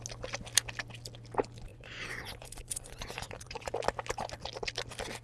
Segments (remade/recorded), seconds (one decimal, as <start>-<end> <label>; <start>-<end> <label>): 0.0-1.7 recorded; 1.7-3.7 remade; 3.7-5.2 recorded